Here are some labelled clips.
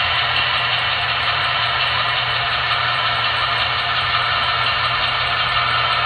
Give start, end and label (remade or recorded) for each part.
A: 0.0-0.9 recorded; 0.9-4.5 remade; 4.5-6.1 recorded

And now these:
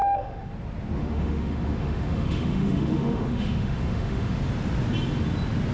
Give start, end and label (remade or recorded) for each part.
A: 0.0-0.5 remade; 0.5-1.0 recorded; 1.0-4.4 remade; 4.4-5.7 recorded